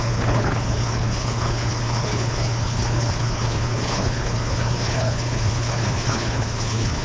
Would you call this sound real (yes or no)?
no